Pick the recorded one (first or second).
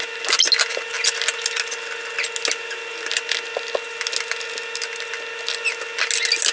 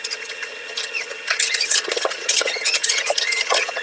first